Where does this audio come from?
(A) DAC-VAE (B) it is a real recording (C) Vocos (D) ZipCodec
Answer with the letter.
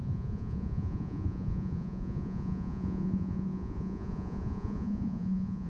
C